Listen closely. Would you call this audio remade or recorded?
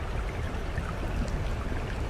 recorded